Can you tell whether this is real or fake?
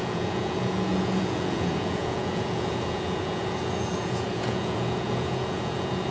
fake